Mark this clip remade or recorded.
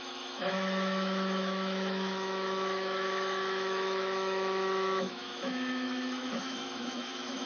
remade